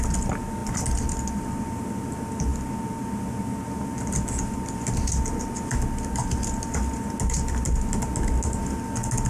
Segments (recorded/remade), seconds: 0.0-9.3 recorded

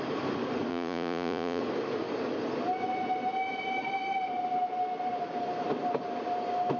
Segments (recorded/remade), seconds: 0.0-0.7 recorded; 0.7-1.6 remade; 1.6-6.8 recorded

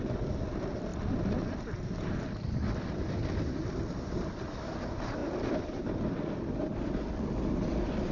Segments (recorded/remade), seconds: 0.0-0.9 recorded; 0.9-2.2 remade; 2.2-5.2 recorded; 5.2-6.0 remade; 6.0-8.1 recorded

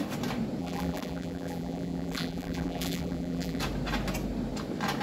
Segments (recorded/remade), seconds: 0.0-0.6 recorded; 0.6-3.6 remade; 3.6-5.0 recorded